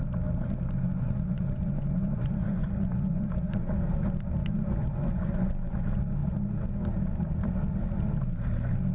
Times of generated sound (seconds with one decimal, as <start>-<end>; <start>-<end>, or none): 0.9-3.7; 4.4-5.8